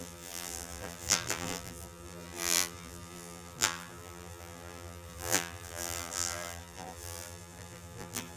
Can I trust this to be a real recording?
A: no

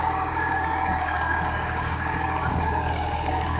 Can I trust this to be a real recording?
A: no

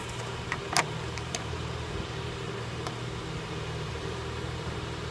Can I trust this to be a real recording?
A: no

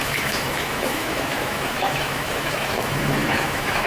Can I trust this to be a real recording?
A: no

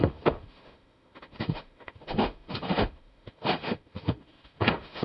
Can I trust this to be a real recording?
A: no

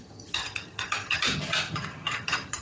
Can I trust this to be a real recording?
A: no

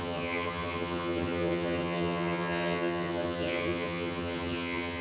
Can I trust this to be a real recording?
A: no